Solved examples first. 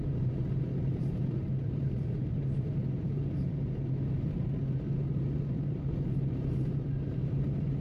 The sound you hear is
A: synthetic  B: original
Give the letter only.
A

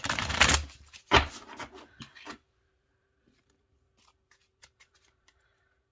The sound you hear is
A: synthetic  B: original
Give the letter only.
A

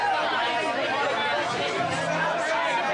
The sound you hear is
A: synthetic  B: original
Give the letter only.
B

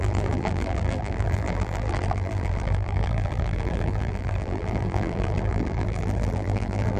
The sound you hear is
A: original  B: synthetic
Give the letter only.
B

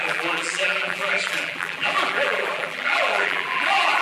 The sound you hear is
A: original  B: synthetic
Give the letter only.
B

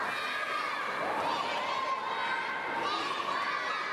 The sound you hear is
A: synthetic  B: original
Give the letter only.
B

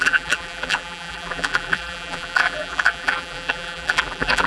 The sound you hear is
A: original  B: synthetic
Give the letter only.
B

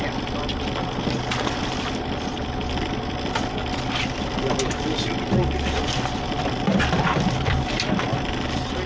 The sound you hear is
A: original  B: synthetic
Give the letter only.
A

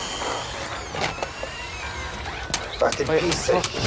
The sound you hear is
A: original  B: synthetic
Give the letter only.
A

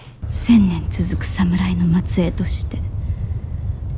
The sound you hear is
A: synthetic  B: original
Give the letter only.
B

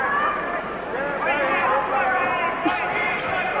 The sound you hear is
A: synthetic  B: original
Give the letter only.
B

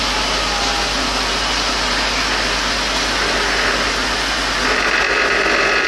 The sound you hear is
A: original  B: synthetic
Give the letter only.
A